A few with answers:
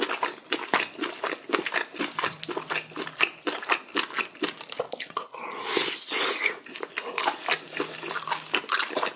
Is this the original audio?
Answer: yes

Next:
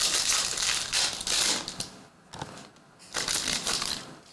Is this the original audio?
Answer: yes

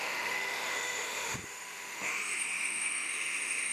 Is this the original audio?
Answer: no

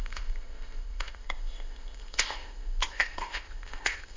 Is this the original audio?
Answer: no